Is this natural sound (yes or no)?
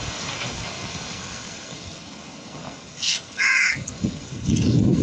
no